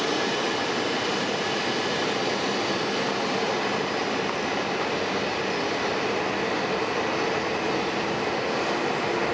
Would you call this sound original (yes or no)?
yes